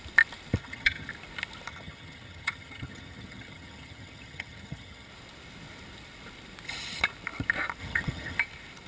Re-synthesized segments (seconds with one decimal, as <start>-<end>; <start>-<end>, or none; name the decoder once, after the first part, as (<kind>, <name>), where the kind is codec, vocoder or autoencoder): 0.6-1.1 (vocoder, HiFi-GAN); 1.7-5.1; 7.8-8.4